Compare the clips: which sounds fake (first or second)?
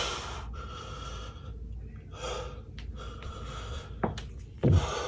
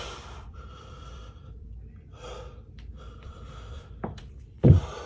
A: second